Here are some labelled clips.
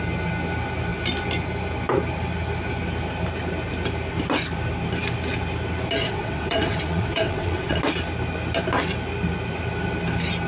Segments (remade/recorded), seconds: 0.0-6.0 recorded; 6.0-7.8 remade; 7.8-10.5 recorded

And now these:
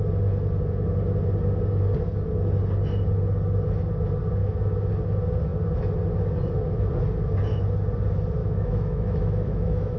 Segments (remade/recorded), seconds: 0.0-4.4 recorded; 4.4-4.9 remade; 4.9-8.4 recorded; 8.4-10.0 remade

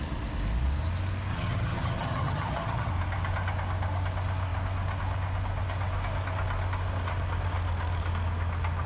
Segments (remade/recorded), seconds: 0.0-1.3 recorded; 1.3-2.9 remade; 2.9-8.9 recorded

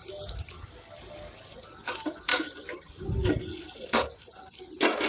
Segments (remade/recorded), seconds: 0.0-5.1 recorded

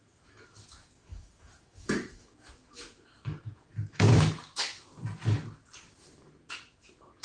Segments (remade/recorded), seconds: 0.0-4.9 remade; 4.9-5.9 recorded; 5.9-7.2 remade